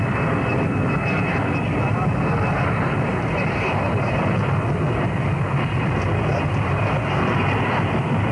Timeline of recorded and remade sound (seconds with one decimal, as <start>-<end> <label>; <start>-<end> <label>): 0.0-8.3 recorded